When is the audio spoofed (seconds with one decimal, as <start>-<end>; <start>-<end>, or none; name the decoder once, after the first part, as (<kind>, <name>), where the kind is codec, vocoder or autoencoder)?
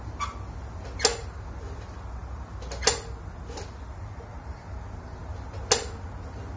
none